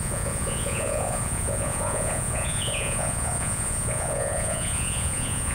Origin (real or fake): fake